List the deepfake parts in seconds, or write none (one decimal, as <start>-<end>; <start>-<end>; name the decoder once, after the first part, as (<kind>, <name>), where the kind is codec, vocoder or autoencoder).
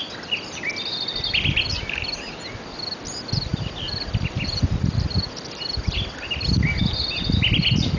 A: 3.5-7.1 (vocoder, BigVGAN v2)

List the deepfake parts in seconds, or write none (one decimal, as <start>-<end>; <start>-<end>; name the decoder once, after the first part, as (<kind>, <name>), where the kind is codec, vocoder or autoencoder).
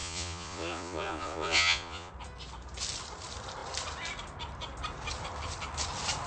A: 0.0-2.1 (vocoder, Vocos)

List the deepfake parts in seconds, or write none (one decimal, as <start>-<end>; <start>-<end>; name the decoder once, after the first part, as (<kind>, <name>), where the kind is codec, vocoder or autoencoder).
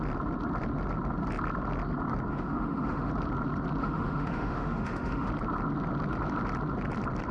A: 2.3-3.1 (autoencoder, DAC-VAE); 3.8-5.3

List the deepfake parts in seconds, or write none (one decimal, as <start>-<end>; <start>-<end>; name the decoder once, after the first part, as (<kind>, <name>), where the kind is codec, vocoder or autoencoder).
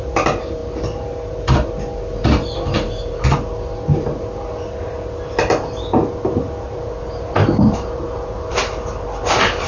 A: none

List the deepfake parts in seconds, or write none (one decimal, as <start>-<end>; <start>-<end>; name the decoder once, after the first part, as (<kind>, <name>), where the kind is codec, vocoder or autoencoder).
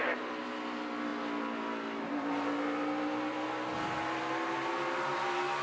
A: none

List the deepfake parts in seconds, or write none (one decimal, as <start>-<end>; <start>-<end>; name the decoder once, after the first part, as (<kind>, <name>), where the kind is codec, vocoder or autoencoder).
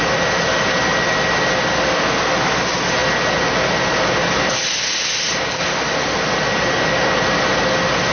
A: none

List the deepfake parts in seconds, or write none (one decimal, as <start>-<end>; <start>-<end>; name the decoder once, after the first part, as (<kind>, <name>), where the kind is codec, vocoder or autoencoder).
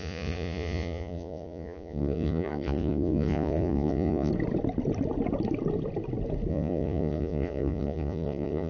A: 0.0-4.3 (vocoder, Vocos); 6.5-8.7